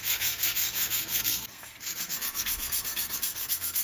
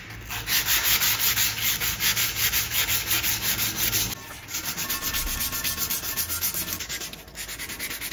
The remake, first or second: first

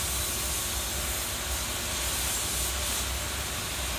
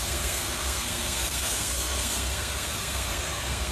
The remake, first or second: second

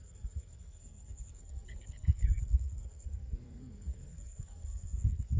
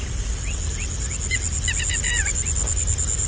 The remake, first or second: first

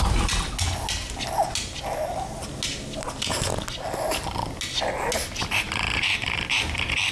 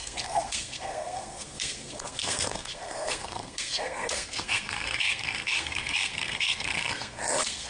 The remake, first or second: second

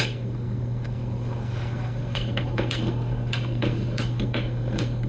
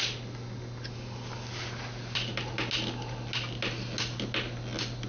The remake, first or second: first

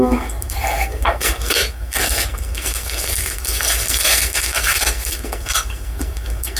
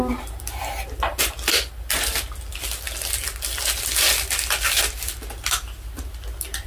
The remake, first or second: first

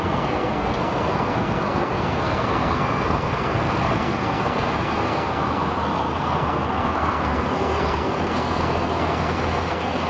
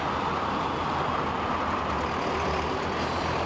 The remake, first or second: first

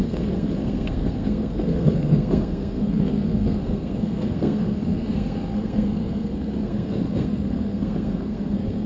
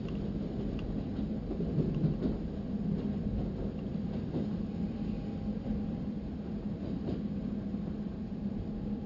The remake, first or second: first